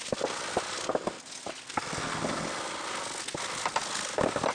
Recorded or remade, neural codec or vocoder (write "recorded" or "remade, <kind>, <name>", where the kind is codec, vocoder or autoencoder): recorded